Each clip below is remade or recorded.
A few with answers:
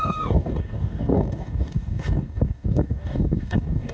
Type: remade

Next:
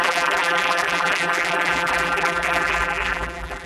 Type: remade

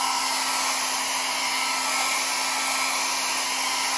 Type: recorded